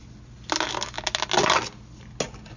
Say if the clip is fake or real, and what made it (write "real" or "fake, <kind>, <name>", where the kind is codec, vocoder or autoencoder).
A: real